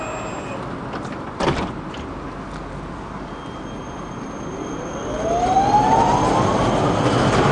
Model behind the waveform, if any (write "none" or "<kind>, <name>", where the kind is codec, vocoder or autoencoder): none